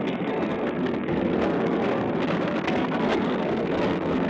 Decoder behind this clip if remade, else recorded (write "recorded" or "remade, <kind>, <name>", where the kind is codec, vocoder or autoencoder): remade, codec, SNAC